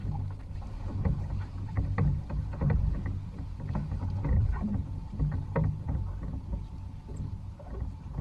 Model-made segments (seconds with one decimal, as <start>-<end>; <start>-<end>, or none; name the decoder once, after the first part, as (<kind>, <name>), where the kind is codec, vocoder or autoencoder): 0.7-8.2 (vocoder, BigVGAN v2)

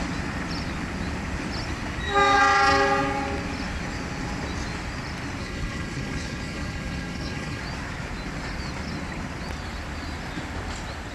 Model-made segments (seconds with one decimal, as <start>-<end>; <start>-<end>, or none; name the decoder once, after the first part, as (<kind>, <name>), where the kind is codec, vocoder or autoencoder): 5.4-7.6 (codec, HILCodec)

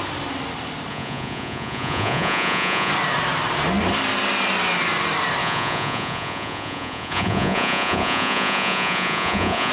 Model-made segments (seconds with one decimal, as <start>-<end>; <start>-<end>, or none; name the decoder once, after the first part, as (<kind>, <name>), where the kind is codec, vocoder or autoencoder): 0.9-2.9 (vocoder, Vocos); 5.4-9.7

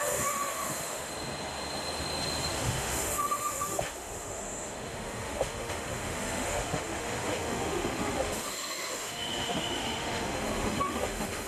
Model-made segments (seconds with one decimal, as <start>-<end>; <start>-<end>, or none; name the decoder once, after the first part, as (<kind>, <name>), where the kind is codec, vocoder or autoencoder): 0.0-1.1 (autoencoder, DAC-VAE); 2.5-11.5

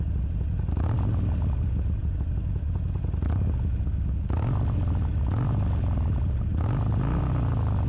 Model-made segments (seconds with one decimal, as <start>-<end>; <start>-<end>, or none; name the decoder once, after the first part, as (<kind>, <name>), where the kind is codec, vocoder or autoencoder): none

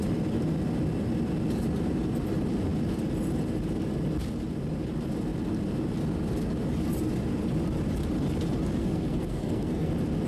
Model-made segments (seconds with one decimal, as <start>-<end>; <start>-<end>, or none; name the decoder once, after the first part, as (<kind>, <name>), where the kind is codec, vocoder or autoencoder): 8.8-9.9 (codec, SNAC)

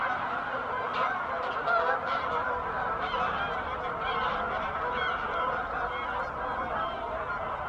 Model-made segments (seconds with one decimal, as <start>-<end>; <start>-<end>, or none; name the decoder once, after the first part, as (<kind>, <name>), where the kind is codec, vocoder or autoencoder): none